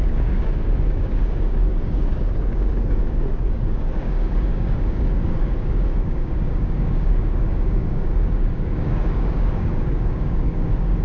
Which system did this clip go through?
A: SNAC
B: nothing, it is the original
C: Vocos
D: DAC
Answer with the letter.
D